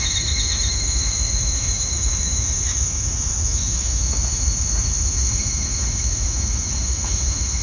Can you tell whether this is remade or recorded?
remade